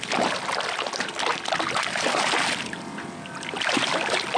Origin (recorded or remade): recorded